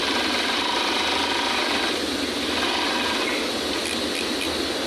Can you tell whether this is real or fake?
real